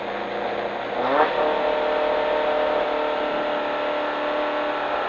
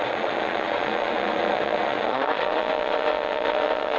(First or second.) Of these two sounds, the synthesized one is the second